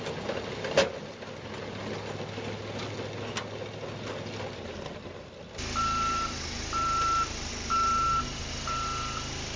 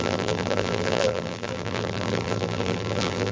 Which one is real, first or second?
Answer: first